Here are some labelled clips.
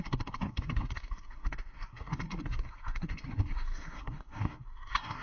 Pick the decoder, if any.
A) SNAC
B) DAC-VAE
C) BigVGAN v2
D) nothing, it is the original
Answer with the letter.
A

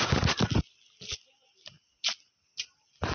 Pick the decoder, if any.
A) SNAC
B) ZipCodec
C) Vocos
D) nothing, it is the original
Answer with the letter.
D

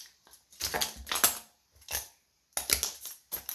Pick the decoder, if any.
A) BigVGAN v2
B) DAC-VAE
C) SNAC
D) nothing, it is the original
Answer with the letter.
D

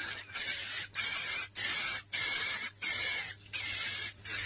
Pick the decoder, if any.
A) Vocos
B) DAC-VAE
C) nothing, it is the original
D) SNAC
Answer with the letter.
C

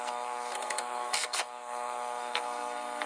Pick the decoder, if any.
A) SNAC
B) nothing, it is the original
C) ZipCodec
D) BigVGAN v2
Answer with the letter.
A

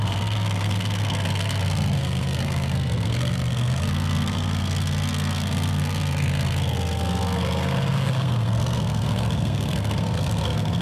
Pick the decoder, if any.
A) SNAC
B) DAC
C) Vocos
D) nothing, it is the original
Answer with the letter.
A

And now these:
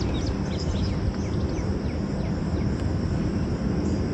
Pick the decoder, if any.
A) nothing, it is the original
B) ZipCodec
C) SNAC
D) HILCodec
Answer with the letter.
A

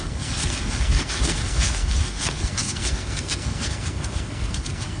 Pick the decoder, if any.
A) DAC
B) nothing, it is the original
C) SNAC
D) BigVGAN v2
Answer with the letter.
C